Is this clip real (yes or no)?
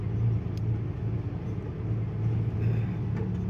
yes